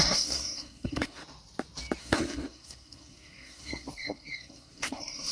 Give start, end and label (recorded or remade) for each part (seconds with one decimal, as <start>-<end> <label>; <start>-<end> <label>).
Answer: 0.0-1.2 remade; 1.2-2.0 recorded; 2.0-5.3 remade